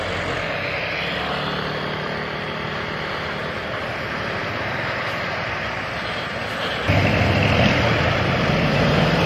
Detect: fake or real real